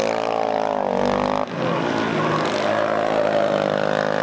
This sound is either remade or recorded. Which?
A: recorded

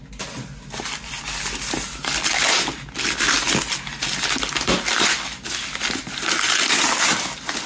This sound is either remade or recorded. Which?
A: recorded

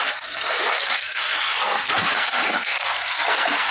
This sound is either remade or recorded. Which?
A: remade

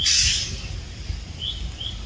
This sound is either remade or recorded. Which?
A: remade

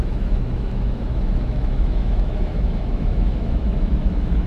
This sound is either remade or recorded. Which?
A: remade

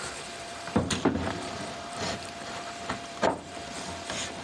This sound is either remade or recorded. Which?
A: remade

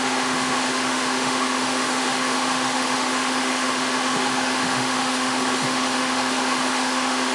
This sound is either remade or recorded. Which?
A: remade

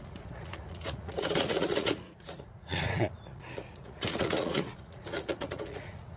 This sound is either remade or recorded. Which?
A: remade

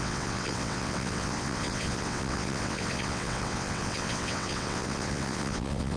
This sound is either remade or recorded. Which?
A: remade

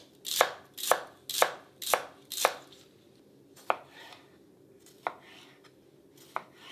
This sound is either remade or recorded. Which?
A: recorded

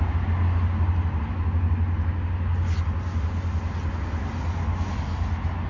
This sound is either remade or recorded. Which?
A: recorded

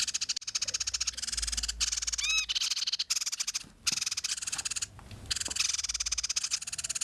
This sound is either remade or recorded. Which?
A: recorded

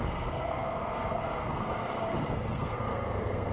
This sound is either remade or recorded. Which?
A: remade